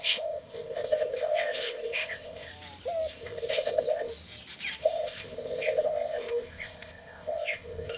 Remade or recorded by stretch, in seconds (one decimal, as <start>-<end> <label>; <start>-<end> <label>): 0.0-2.5 remade; 2.5-3.1 recorded; 3.1-4.1 remade; 4.1-4.8 recorded; 4.8-8.0 remade